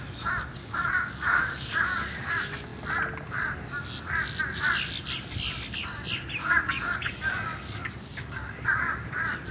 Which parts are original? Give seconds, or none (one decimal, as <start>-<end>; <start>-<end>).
0.0-0.6; 2.3-6.4; 9.1-9.5